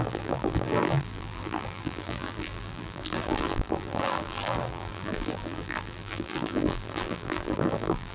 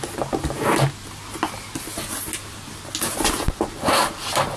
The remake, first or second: first